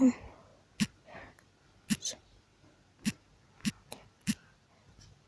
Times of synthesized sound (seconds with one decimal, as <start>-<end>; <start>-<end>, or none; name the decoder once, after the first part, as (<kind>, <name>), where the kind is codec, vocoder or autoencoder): 0.0-0.5 (vocoder, BigVGAN v2); 3.7-5.3